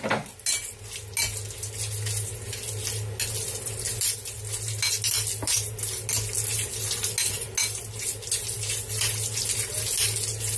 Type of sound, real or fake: real